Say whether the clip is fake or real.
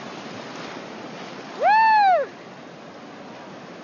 real